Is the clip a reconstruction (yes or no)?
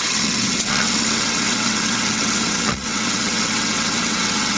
yes